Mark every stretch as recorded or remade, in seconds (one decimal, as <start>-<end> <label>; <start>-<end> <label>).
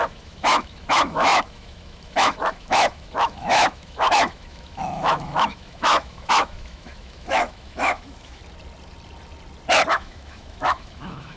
0.0-8.4 remade; 8.4-9.9 recorded; 9.9-11.4 remade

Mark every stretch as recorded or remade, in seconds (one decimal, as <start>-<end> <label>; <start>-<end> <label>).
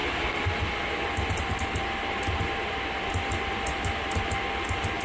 0.0-5.0 recorded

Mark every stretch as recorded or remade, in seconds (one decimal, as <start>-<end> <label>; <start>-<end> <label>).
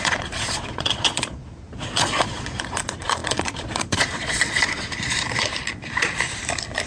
0.0-5.5 remade; 5.5-6.9 recorded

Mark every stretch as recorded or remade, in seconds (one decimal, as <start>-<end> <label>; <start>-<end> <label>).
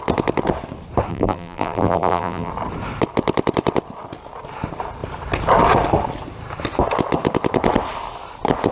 0.0-1.1 recorded; 1.1-2.5 remade; 2.5-8.7 recorded